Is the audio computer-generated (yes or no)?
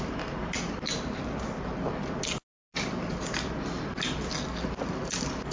no